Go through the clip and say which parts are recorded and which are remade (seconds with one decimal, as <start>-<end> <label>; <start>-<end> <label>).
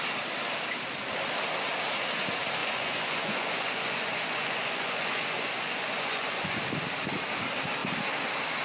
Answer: 0.0-2.6 recorded; 2.6-6.6 remade; 6.6-8.6 recorded